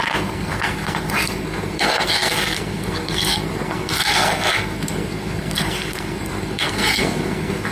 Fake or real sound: fake